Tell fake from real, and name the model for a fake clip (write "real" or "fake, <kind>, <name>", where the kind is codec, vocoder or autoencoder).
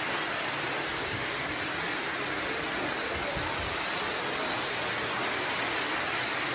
real